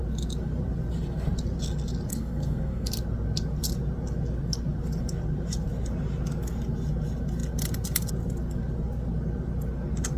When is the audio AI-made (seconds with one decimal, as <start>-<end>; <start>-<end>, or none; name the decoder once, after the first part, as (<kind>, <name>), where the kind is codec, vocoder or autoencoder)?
2.1-2.9 (codec, SNAC)